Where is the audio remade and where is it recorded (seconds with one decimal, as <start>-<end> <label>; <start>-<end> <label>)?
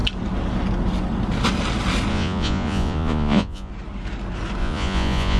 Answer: 0.0-2.1 recorded; 2.1-3.7 remade; 3.7-4.6 recorded; 4.6-5.4 remade